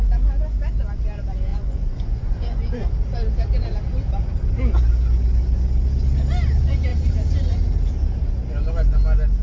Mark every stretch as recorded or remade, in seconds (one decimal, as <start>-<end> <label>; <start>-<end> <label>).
0.0-1.5 recorded; 1.5-2.9 remade; 2.9-9.4 recorded